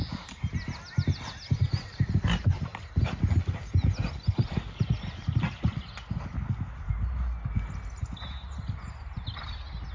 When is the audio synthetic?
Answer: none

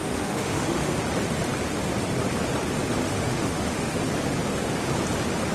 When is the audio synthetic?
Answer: 0.0-0.9 (autoencoder, DAC-VAE); 3.0-4.0